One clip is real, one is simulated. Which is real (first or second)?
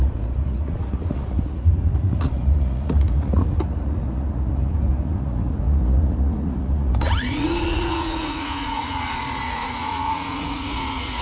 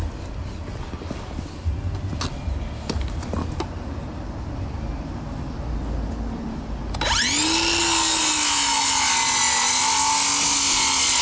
second